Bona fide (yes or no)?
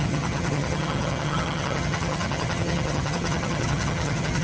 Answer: no